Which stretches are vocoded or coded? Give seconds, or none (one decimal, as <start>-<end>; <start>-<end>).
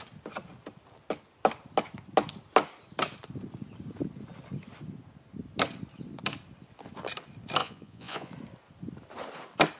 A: 7.6-8.3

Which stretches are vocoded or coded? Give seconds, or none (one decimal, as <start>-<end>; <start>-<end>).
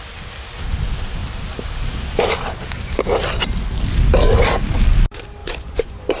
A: 5.4-6.2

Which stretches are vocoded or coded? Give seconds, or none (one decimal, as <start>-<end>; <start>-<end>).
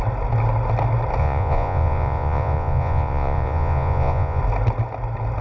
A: 1.2-4.4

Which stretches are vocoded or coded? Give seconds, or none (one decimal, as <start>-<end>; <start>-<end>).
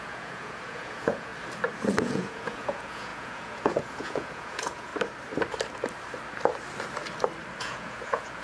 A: 0.0-1.3; 2.0-4.9; 7.6-8.4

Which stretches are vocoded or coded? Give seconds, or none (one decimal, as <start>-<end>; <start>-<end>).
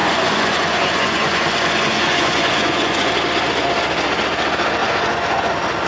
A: 0.0-3.1; 4.8-5.5